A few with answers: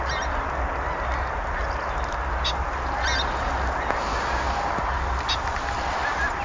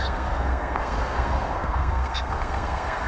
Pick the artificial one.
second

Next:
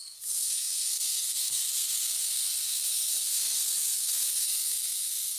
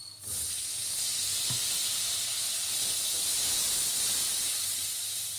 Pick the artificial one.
first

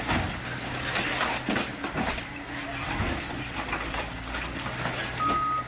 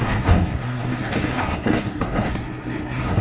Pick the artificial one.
second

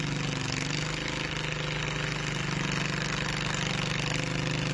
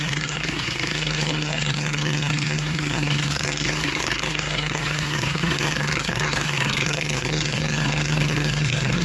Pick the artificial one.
second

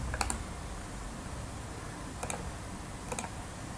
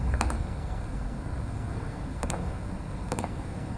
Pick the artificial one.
second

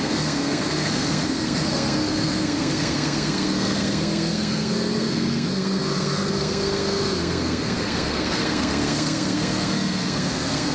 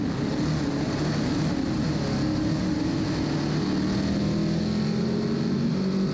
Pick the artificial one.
first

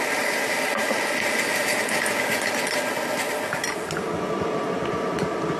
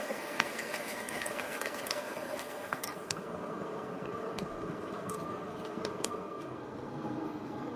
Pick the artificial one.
second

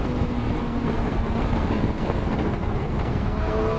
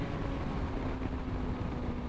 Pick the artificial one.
first